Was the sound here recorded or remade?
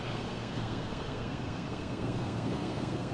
remade